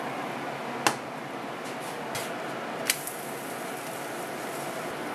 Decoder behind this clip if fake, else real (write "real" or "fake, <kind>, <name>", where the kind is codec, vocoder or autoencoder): real